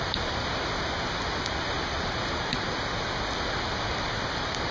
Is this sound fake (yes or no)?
no